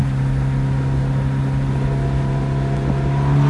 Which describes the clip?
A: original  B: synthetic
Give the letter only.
A